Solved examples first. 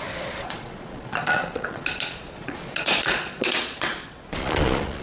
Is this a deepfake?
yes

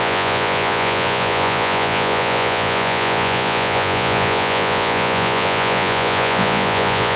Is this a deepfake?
yes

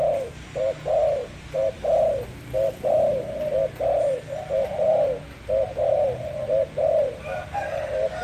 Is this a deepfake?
no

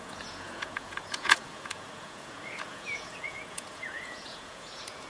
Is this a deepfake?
yes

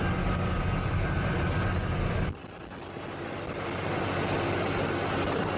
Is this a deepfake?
no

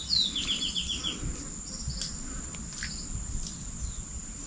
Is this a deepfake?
no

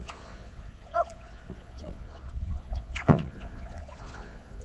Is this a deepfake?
yes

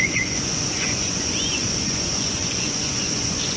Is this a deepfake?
yes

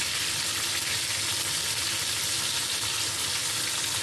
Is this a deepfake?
no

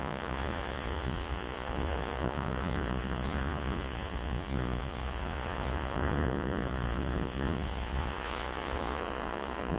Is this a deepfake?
yes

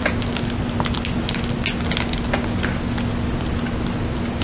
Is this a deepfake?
no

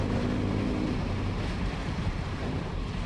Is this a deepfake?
no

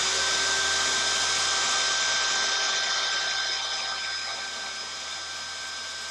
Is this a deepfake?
no